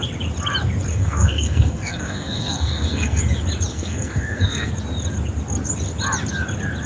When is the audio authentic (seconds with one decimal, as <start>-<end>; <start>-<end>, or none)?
0.0-0.9; 3.2-3.7; 4.7-6.9